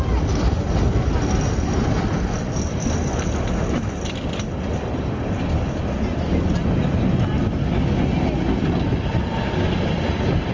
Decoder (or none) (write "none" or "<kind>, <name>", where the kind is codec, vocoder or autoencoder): none